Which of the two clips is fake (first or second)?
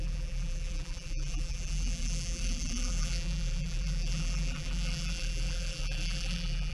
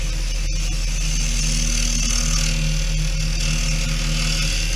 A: first